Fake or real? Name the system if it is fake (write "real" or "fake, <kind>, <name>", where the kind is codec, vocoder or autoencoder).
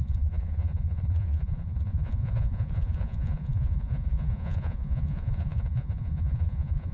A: fake, vocoder, Vocos